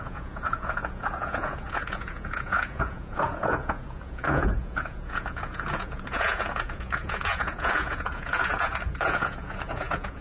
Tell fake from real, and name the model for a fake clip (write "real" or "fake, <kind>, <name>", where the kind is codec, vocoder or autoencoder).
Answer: fake, vocoder, Vocos